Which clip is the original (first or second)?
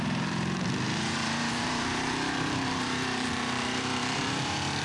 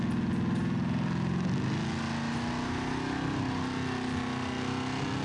second